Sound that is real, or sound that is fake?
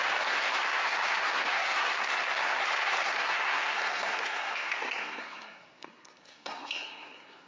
fake